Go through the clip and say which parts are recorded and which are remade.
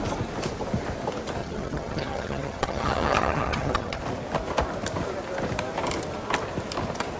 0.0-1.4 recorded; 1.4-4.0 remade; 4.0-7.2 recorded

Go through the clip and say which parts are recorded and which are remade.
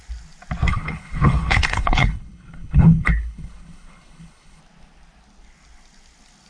0.0-0.7 recorded; 0.7-4.6 remade; 4.6-6.5 recorded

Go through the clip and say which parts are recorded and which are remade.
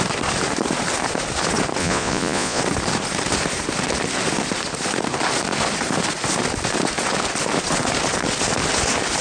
0.0-1.8 recorded; 1.8-2.6 remade; 2.6-9.2 recorded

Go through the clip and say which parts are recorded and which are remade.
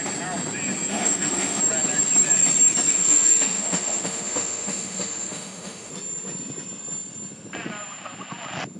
0.0-0.9 recorded; 0.9-1.6 remade; 1.6-2.9 recorded; 2.9-5.9 remade; 5.9-8.8 recorded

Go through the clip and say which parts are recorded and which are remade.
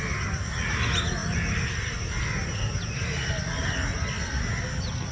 0.0-5.1 recorded